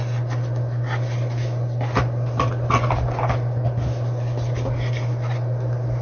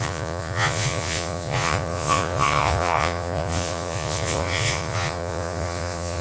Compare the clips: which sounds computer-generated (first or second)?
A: second